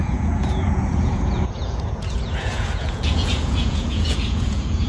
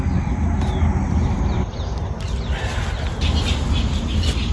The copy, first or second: first